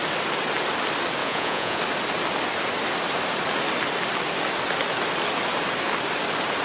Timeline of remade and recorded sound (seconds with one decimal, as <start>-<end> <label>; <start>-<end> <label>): 0.0-1.2 recorded; 1.2-1.8 remade; 1.8-6.6 recorded